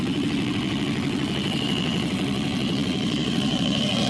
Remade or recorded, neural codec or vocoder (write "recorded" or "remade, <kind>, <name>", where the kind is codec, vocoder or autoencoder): remade, vocoder, WaveNeXt